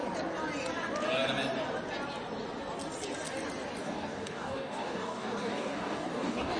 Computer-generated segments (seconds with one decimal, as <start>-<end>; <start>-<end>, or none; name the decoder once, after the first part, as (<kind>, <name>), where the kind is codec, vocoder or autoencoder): 3.8-6.6 (codec, DAC)